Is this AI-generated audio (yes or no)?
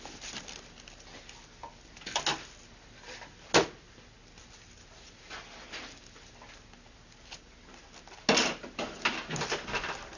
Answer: no